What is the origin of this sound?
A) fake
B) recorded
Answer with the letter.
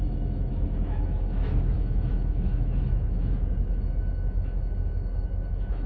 A